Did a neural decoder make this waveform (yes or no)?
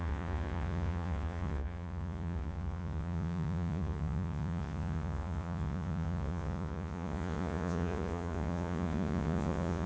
yes